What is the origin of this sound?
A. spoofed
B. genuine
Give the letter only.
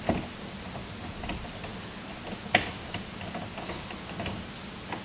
B